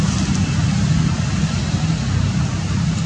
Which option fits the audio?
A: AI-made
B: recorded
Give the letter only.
B